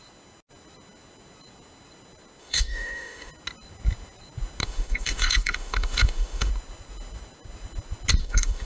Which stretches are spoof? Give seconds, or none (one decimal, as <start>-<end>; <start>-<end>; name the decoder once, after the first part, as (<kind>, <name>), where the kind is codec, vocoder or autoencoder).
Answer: 2.4-3.3 (autoencoder, DAC-VAE); 4.6-6.5; 8.2-8.7